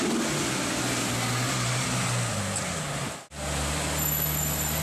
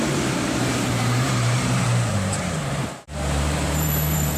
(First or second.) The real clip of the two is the first